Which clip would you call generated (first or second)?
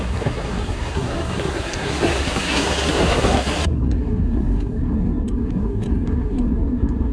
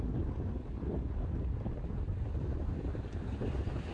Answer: first